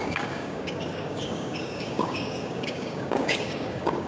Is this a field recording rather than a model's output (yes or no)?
no